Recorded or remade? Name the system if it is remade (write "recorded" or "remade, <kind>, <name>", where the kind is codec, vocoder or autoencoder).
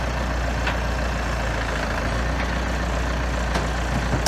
recorded